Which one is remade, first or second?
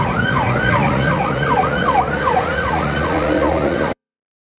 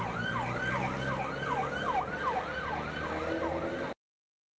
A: first